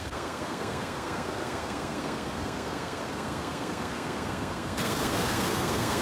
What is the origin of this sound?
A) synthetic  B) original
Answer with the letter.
A